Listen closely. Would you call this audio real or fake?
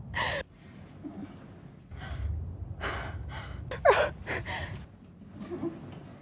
real